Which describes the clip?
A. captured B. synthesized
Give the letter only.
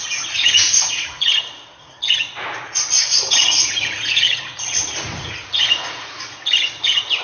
B